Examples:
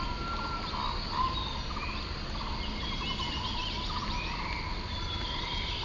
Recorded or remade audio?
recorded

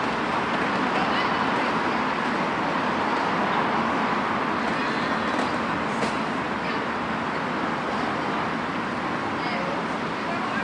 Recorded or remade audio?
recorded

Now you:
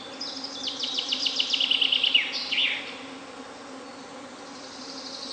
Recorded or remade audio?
recorded